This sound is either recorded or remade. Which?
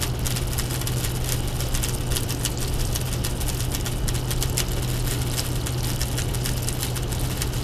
recorded